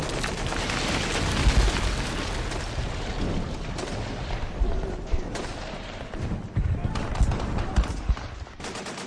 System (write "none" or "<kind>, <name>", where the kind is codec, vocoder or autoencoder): none